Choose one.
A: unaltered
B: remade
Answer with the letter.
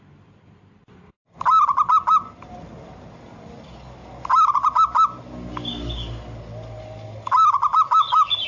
A